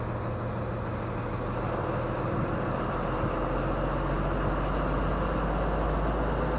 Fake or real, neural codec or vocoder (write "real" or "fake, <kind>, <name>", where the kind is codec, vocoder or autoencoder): real